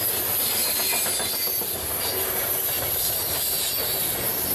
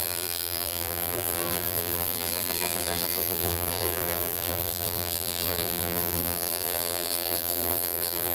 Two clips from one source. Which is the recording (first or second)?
first